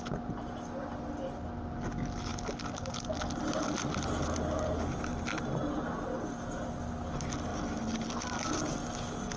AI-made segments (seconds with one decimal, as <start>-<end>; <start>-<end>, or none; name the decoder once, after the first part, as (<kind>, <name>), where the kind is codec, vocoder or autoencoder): none